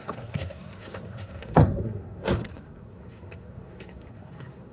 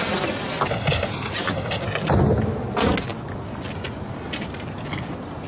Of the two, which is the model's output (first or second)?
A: first